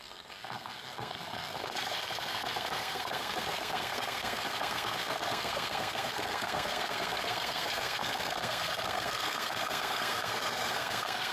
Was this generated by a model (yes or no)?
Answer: yes